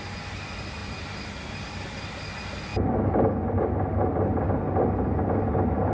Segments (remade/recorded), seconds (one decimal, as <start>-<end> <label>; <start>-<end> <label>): 0.0-5.9 recorded